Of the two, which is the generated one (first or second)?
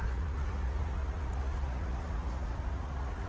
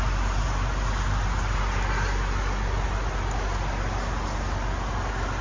first